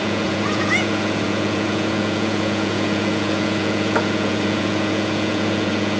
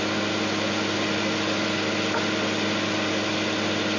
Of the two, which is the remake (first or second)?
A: first